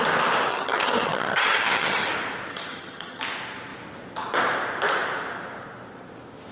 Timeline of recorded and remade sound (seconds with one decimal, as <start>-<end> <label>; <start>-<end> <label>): 0.0-0.5 recorded; 0.5-2.1 remade; 2.1-2.5 recorded; 2.5-3.2 remade; 3.2-6.5 recorded